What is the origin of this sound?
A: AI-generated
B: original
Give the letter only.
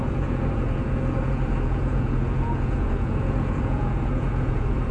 A